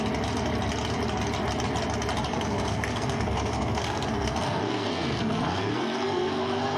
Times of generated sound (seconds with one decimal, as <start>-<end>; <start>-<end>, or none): 2.3-6.8